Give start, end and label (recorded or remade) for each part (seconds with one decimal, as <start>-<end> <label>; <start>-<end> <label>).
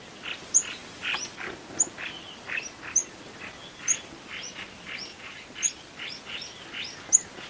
0.0-5.1 recorded; 5.1-5.7 remade; 5.7-7.5 recorded